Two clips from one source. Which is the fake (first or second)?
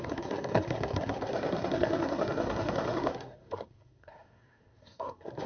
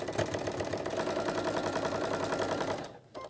first